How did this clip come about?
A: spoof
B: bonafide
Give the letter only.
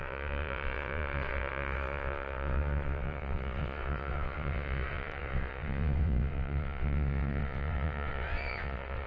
A